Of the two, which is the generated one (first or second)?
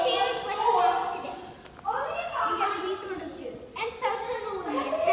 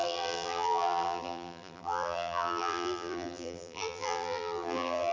second